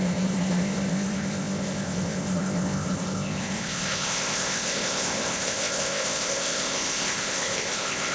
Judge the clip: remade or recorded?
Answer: remade